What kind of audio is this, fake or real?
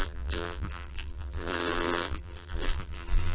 fake